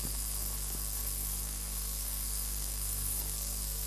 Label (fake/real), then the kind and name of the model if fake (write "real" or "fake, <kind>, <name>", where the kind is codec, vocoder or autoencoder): fake, codec, SNAC